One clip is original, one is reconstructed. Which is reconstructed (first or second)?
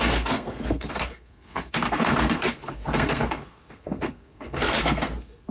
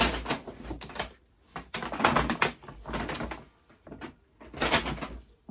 first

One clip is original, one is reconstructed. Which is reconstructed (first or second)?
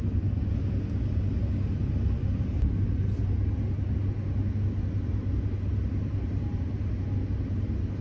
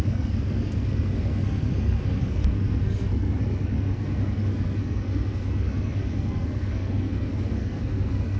second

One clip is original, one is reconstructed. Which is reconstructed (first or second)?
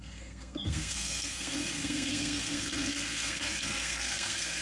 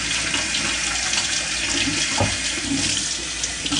first